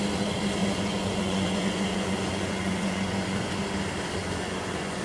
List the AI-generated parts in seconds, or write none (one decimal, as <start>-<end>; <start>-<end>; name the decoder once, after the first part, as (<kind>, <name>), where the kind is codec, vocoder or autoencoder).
0.6-3.6 (vocoder, Vocos); 4.2-5.0